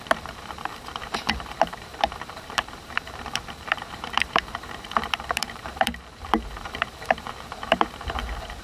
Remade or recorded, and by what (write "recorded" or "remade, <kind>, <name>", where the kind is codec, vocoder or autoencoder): remade, vocoder, BigVGAN v2